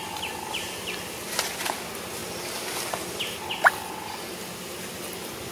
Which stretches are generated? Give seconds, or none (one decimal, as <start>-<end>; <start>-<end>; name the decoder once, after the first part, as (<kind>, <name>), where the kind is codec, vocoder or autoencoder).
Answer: none